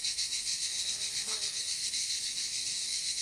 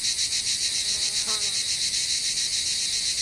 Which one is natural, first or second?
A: second